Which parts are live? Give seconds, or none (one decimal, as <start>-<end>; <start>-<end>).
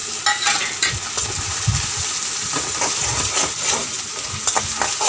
0.0-5.1